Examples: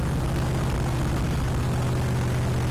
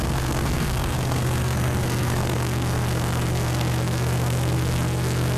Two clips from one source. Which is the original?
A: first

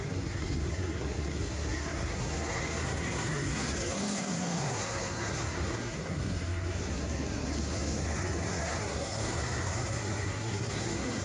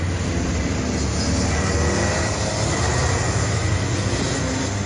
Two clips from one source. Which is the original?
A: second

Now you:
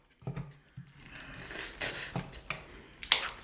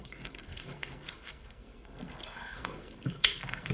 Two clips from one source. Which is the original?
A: first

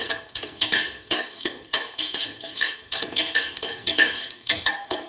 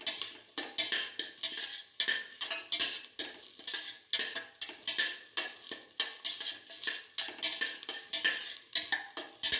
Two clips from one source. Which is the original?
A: second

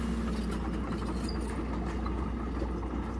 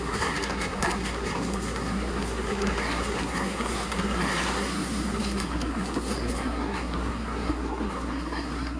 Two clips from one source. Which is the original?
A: first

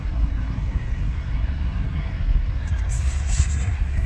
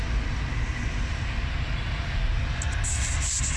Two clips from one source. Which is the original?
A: second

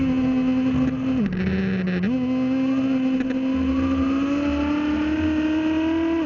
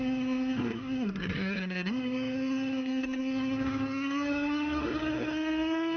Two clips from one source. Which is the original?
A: first